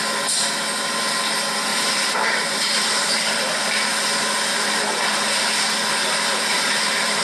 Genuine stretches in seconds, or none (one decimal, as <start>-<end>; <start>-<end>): 0.0-1.7; 5.4-6.0